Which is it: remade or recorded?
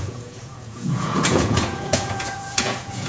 remade